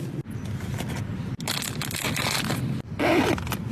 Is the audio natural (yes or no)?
yes